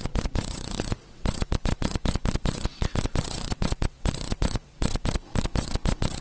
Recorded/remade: remade